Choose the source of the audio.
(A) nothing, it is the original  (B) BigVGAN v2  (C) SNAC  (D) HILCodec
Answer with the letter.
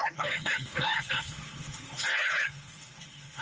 D